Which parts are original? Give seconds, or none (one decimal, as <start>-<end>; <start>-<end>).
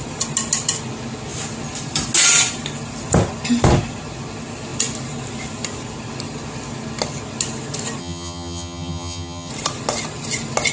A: 0.0-8.0; 9.5-10.7